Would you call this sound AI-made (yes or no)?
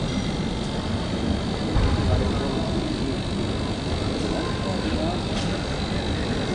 no